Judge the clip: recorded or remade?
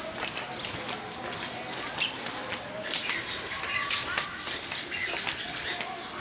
recorded